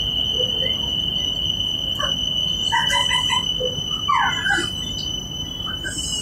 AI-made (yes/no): no